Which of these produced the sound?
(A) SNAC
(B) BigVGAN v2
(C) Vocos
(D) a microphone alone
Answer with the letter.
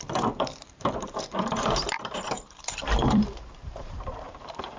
B